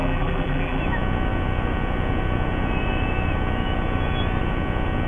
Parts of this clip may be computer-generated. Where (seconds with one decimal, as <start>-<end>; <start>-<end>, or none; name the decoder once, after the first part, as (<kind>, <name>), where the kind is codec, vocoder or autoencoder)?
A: 0.0-0.8 (vocoder, BigVGAN v2)